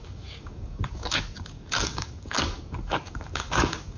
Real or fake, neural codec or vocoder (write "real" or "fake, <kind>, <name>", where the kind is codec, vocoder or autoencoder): fake, codec, DAC